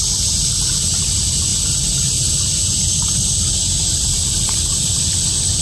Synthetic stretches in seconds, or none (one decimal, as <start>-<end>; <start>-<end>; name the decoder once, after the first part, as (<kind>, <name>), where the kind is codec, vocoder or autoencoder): none